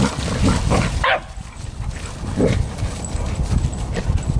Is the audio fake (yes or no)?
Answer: no